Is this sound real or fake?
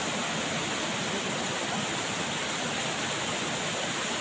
real